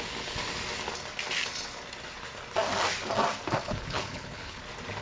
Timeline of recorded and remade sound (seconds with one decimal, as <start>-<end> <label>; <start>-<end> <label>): 0.0-3.6 recorded; 3.6-4.6 remade; 4.6-5.0 recorded